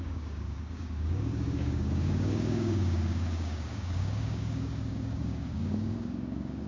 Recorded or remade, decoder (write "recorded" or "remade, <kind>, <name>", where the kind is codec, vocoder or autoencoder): remade, codec, DAC